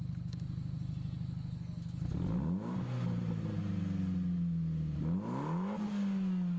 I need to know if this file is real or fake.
real